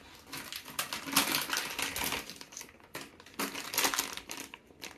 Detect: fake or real real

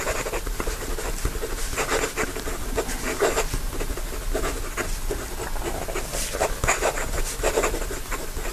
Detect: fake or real real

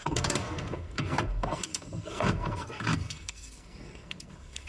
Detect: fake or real fake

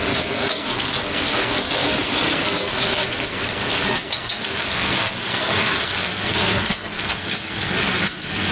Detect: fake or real fake